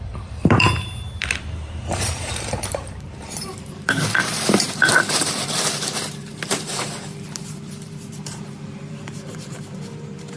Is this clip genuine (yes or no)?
no